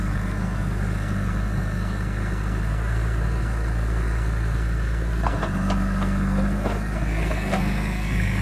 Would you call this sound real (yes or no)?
no